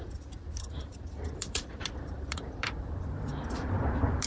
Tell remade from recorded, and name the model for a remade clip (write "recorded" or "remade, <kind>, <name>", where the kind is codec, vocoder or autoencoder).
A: remade, vocoder, BigVGAN v2